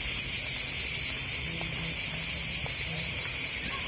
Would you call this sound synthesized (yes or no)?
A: no